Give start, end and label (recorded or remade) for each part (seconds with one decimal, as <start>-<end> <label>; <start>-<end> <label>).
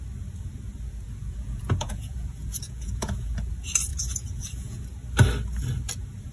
0.0-1.2 recorded; 1.2-3.5 remade; 3.5-3.9 recorded; 3.9-4.8 remade; 4.8-6.3 recorded